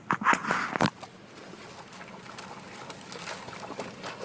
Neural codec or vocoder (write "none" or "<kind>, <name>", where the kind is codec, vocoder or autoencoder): none